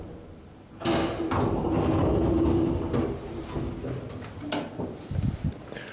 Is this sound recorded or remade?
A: recorded